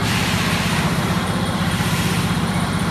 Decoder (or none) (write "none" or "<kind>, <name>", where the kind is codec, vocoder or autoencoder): vocoder, BigVGAN v2